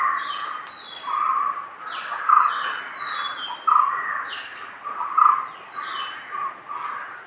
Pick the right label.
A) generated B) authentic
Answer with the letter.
B